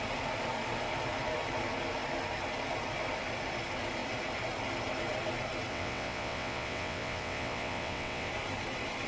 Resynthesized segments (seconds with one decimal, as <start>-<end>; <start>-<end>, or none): 5.7-8.3